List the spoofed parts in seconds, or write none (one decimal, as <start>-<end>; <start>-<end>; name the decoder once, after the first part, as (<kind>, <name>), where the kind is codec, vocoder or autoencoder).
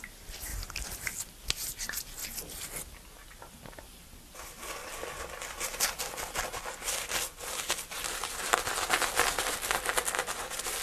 none